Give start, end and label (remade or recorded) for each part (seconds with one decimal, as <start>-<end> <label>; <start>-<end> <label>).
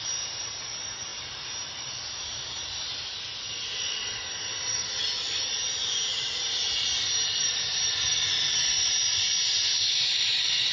0.0-10.7 recorded